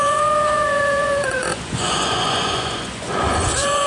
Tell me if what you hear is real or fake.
fake